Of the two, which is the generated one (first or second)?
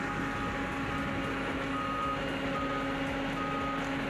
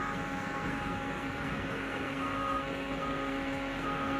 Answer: second